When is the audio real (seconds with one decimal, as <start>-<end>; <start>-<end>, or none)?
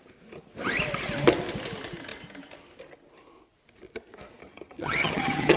0.0-4.4